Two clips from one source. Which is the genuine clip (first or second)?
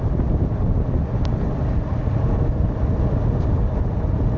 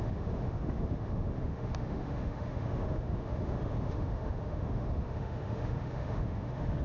first